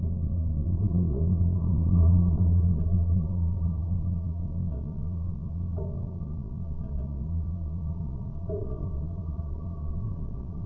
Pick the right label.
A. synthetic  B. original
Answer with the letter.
A